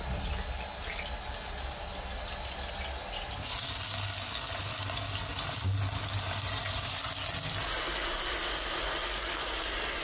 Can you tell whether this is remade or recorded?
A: recorded